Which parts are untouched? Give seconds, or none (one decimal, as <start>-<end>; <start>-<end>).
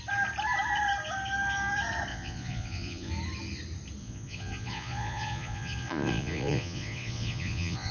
0.0-2.1; 3.1-4.0